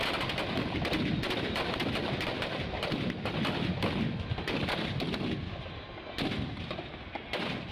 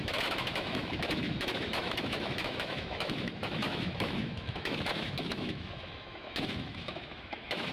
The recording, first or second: first